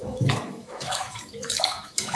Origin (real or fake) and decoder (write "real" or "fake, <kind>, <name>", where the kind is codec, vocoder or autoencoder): fake, autoencoder, DAC-VAE